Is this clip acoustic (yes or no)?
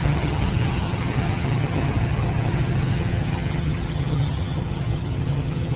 no